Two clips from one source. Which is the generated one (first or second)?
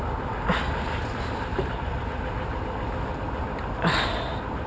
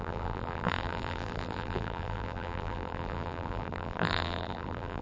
second